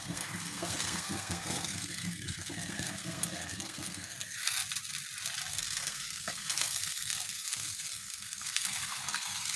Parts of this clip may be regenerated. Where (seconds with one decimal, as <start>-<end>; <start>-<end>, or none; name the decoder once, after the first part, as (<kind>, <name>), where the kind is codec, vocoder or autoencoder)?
0.0-4.6 (codec, SNAC); 5.5-9.6